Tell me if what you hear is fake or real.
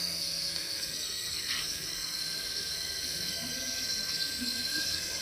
fake